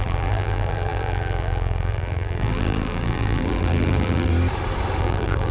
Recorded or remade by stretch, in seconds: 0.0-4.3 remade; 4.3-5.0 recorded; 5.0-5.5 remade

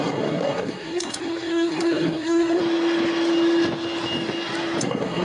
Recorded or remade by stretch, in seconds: 0.0-2.6 remade; 2.6-4.8 recorded; 4.8-5.2 remade

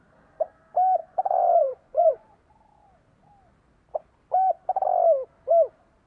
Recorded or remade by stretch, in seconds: 0.0-1.0 recorded; 1.0-2.5 remade; 2.5-6.1 recorded

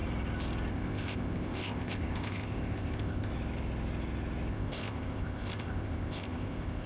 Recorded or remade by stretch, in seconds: 0.0-0.7 recorded; 0.7-3.3 remade; 3.3-4.5 recorded; 4.5-6.9 remade

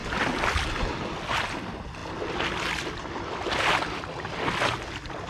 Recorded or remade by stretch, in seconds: 0.0-5.3 recorded